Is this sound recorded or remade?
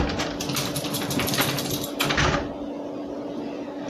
recorded